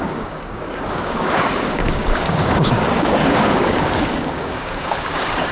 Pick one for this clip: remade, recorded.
remade